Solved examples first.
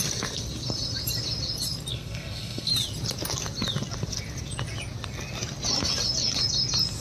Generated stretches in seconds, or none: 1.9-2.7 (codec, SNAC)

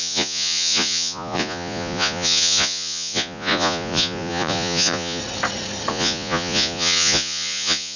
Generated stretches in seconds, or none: 0.0-5.2 (vocoder, Vocos); 5.9-8.0

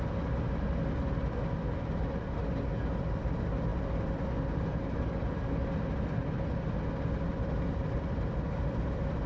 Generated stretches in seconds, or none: none

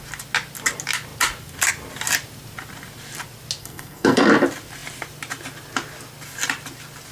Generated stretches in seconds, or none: 3.6-4.3 (codec, SNAC)

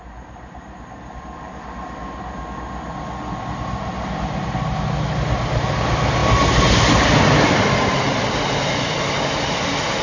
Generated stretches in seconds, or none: none